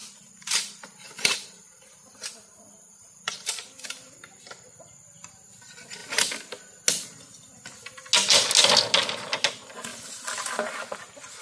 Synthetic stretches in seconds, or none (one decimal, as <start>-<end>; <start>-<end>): 0.0-4.9; 9.9-10.5